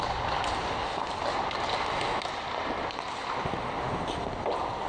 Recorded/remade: recorded